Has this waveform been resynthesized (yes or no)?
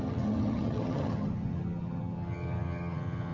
yes